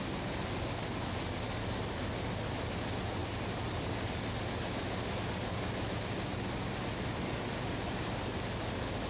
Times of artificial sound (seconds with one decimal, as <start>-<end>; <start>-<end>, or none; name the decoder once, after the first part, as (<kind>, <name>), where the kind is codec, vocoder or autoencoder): none